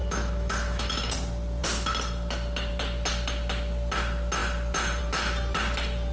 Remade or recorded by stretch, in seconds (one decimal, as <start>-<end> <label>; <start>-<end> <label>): 0.0-1.1 remade; 1.1-6.1 recorded